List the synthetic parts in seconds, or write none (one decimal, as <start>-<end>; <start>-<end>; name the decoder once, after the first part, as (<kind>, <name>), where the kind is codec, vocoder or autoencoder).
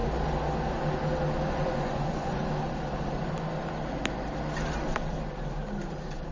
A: 1.5-2.4 (vocoder, Vocos)